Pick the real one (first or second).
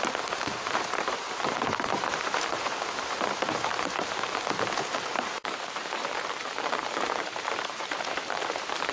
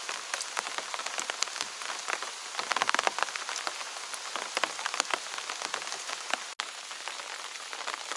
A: second